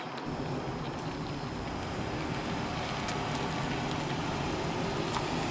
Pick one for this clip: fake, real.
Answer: real